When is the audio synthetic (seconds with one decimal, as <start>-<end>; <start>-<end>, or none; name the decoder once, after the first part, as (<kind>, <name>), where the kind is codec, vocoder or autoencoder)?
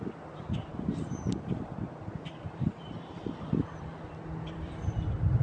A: 0.0-5.4 (vocoder, BigVGAN v2)